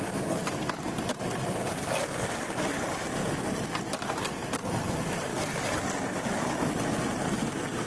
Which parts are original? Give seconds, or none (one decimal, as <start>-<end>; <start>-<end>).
0.0-7.9